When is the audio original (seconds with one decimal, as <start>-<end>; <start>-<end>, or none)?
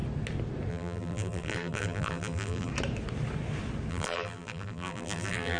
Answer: 0.0-0.7; 2.7-3.9